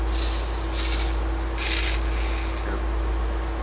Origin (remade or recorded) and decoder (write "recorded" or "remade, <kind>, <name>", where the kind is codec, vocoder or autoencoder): recorded